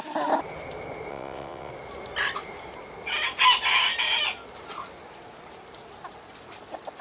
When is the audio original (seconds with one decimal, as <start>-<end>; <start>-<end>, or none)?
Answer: 0.0-1.1; 1.7-7.0

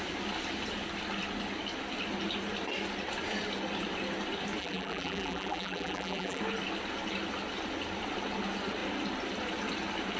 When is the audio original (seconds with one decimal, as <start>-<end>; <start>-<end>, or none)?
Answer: 0.0-4.6; 6.4-10.2

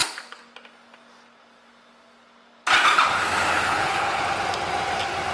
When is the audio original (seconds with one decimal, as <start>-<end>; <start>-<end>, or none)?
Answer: 0.0-3.6; 4.2-5.3